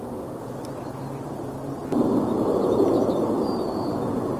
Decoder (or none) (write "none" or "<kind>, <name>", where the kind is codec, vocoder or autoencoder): none